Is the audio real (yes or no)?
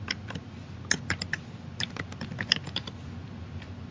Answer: yes